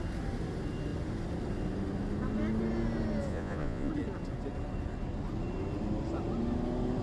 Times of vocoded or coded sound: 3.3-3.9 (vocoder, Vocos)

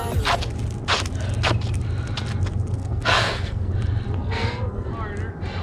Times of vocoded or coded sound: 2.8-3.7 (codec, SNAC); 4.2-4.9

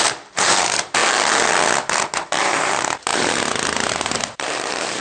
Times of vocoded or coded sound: 0.0-1.0 (vocoder, BigVGAN v2); 2.0-5.0

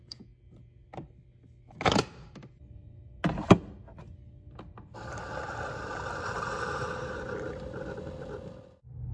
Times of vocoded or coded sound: none

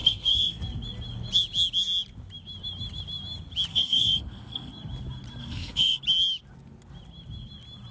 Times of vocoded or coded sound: 0.0-0.6 (codec, SNAC); 3.7-4.7; 5.4-6.0